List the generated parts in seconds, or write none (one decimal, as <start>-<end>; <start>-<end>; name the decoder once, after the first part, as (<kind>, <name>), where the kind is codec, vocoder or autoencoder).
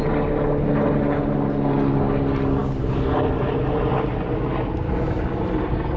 none